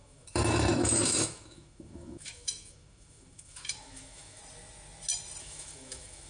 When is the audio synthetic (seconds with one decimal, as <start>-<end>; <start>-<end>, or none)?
0.0-4.4; 5.4-6.3